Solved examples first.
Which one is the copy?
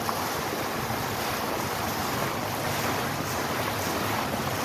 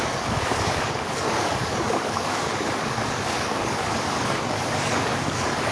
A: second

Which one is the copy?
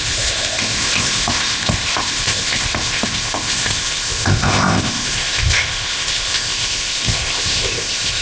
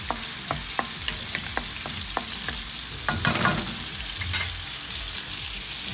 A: first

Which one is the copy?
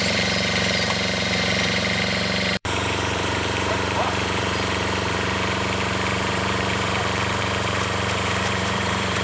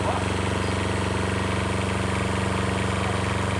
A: first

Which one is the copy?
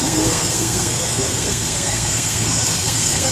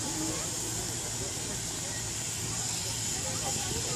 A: first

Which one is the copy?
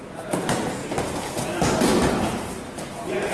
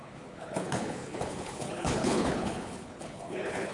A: second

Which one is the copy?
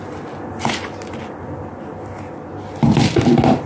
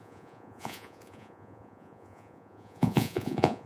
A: second